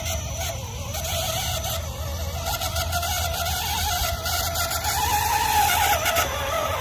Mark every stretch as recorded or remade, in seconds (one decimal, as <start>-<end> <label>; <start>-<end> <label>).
0.0-6.8 recorded